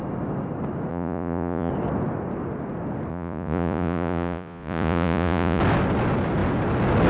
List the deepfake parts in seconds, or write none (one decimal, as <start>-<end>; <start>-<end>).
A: 0.9-1.7; 3.1-5.6